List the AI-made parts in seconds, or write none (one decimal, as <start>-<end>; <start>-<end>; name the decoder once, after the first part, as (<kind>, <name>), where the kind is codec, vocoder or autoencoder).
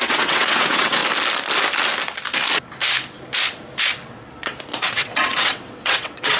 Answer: 0.0-1.0 (vocoder, WaveNeXt); 4.8-6.4